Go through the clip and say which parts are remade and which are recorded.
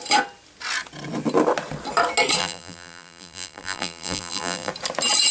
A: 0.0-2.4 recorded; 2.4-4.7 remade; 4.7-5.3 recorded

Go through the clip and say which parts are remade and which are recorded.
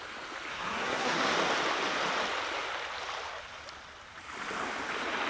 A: 0.0-0.5 recorded; 0.5-1.3 remade; 1.3-5.3 recorded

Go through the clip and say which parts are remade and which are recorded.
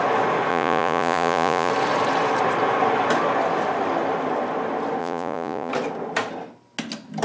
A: 0.0-0.5 recorded; 0.5-1.7 remade; 1.7-5.0 recorded; 5.0-5.7 remade; 5.7-7.2 recorded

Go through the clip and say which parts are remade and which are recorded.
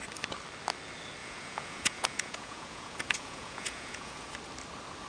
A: 0.0-1.2 recorded; 1.2-4.3 remade; 4.3-5.1 recorded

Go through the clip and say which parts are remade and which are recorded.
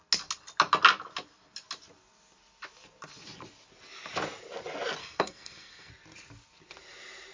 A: 0.0-5.0 recorded; 5.0-5.9 remade; 5.9-7.3 recorded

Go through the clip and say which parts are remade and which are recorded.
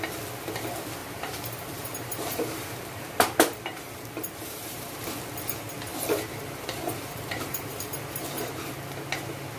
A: 0.0-1.0 recorded; 1.0-5.2 remade; 5.2-5.9 recorded; 5.9-8.6 remade; 8.6-9.6 recorded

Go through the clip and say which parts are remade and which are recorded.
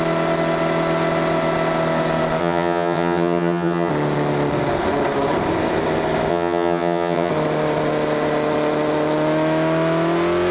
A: 0.0-2.4 recorded; 2.4-3.9 remade; 3.9-6.3 recorded; 6.3-7.3 remade; 7.3-10.5 recorded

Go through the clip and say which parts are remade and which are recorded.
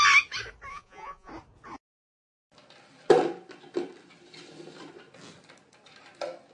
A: 0.0-0.7 recorded; 0.7-1.3 remade; 1.3-6.5 recorded